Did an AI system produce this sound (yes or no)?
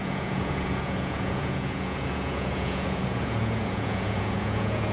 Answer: yes